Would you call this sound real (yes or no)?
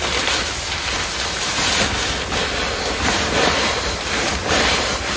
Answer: yes